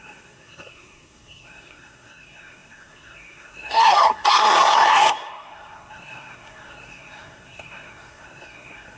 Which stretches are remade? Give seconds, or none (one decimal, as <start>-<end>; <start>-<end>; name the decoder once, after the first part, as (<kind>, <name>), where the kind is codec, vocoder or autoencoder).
0.0-9.0 (codec, SNAC)